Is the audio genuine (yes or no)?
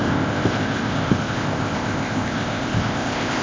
no